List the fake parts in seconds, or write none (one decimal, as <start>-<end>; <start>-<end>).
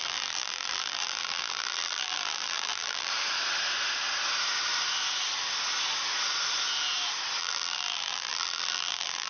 0.0-3.1; 7.4-9.3